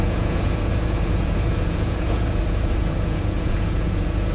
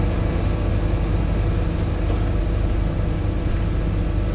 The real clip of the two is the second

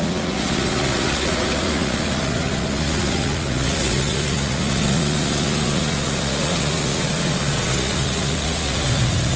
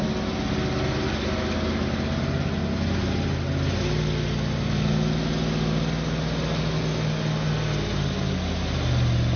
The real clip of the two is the second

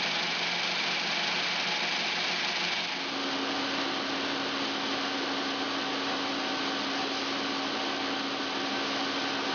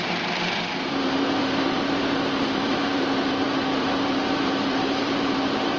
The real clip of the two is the first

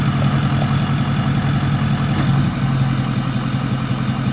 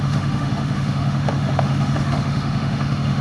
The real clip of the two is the first